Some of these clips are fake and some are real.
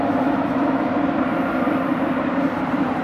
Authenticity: fake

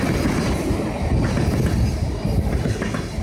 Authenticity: real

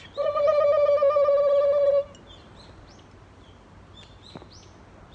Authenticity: real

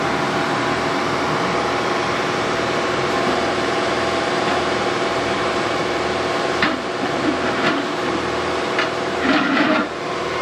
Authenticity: fake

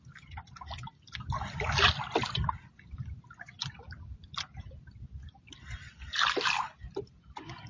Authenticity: real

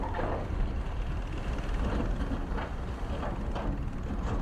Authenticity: real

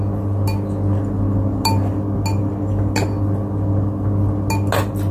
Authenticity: real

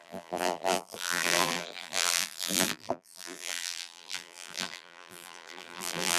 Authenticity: fake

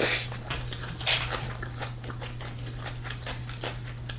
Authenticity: real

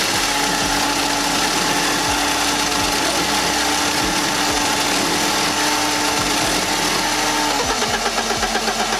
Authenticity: real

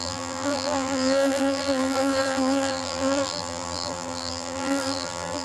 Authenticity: fake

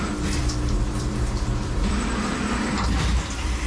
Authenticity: fake